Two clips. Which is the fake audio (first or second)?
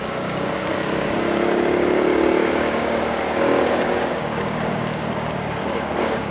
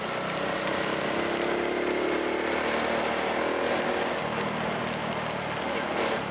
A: first